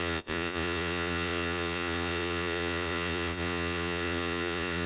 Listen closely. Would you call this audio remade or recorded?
remade